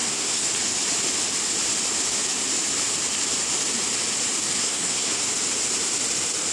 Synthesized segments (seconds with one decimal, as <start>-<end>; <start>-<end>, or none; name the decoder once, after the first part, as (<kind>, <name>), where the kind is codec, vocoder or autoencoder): 0.0-0.5 (codec, SNAC); 4.6-5.2

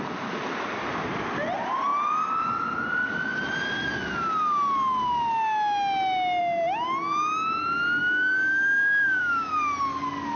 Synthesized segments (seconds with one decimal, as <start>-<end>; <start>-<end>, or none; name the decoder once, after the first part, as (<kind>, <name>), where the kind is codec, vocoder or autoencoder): 8.0-9.5 (codec, DAC)

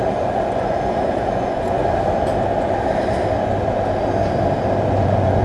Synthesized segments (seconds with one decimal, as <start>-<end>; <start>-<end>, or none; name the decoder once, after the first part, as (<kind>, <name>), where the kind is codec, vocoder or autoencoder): 0.0-1.8 (vocoder, Vocos); 5.0-5.4

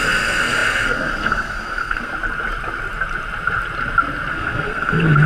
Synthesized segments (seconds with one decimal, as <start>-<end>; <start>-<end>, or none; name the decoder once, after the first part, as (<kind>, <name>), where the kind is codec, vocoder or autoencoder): 0.0-2.1 (codec, SNAC); 4.3-5.3

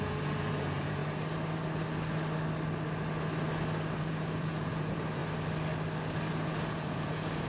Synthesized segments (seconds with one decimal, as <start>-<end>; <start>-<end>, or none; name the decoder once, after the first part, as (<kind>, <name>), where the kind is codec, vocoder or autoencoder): 0.0-1.0 (vocoder, Vocos); 4.0-5.2; 6.3-7.5

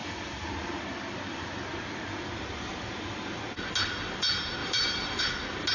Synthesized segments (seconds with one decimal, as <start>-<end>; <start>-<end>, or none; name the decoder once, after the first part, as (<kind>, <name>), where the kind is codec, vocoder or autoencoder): 0.0-3.4 (vocoder, BigVGAN v2); 4.6-5.2

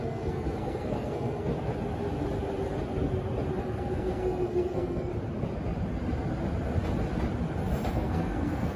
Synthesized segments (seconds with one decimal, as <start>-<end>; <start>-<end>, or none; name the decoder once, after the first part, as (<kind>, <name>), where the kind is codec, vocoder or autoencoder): 0.0-1.5 (codec, SNAC); 3.6-5.1; 7.9-8.8

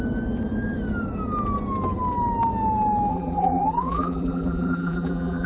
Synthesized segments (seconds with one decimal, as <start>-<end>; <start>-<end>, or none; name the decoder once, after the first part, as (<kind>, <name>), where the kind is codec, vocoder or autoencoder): 3.1-5.5 (vocoder, BigVGAN v2)